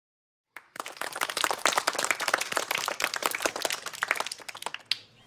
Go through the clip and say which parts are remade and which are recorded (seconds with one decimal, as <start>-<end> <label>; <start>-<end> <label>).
0.0-0.4 recorded; 0.4-3.6 remade; 3.6-5.3 recorded